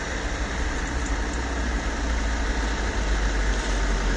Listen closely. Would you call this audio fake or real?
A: real